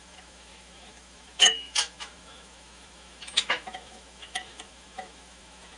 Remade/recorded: remade